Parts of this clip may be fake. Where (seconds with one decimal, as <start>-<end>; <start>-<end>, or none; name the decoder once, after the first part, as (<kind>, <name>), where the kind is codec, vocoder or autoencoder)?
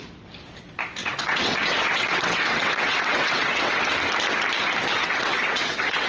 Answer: 1.0-3.9 (vocoder, WaveNeXt); 5.0-6.1